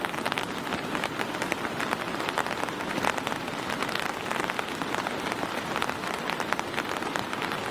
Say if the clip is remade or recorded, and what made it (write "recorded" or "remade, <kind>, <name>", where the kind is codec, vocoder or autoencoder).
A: remade, vocoder, BigVGAN v2